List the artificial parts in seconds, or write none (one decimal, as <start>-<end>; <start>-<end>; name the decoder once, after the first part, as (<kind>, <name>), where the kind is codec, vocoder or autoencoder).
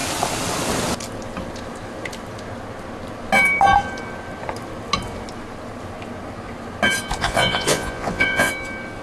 7.2-8.5 (vocoder, Vocos)